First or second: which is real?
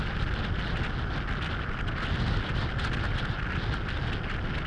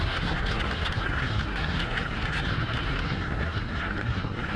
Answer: first